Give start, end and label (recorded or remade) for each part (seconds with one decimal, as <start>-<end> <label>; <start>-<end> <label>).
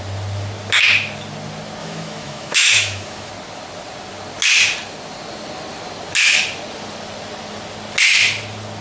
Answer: 0.0-1.8 recorded; 1.8-3.3 remade; 3.3-8.8 recorded